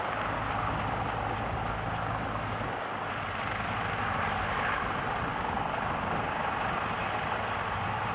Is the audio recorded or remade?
recorded